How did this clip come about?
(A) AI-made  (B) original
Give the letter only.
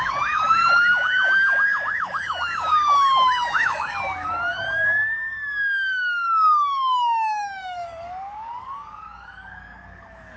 A